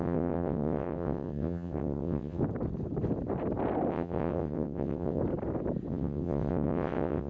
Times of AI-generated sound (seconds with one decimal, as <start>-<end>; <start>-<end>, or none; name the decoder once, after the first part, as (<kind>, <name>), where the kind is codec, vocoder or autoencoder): 0.0-2.4 (vocoder, WaveNeXt); 3.9-5.2; 5.9-7.3